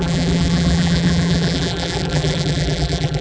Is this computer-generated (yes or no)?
yes